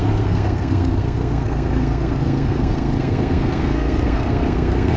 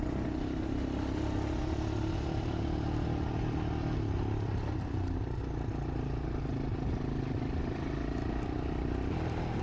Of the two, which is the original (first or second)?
second